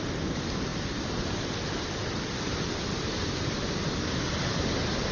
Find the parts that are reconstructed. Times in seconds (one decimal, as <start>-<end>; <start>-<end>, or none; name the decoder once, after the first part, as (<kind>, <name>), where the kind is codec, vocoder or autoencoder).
none